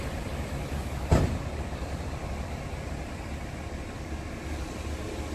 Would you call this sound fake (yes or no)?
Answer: no